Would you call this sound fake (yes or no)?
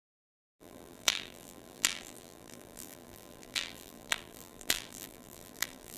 yes